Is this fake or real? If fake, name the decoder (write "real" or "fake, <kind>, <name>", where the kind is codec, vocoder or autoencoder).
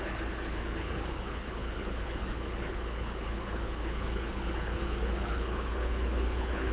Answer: fake, codec, HILCodec